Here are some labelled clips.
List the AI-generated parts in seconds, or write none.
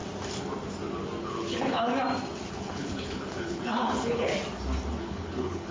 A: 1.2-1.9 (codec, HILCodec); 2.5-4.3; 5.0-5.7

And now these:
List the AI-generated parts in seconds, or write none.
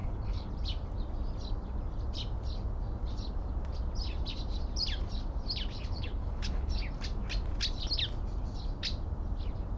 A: 0.0-0.5 (codec, HILCodec); 5.8-6.7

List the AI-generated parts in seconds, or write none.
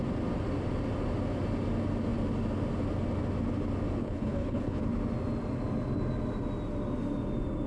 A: 4.0-4.8 (codec, HILCodec)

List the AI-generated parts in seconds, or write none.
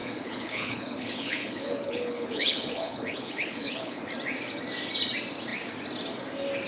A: 0.0-4.0 (codec, HILCodec)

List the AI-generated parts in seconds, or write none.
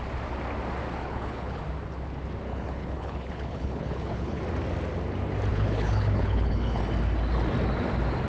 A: 1.0-1.6 (codec, HILCodec); 2.5-4.4; 5.5-6.8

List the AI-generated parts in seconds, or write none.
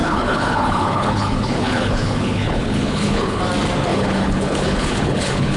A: 0.0-3.4 (codec, HILCodec); 3.9-5.6